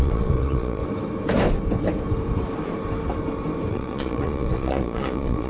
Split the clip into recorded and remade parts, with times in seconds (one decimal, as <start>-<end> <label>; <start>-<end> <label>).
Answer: 0.0-0.8 remade; 0.8-3.7 recorded; 3.7-5.5 remade